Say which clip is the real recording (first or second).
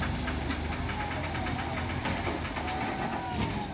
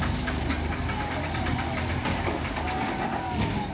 first